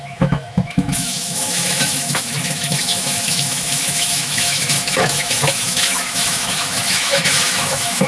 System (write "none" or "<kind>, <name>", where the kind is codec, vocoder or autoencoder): autoencoder, DAC-VAE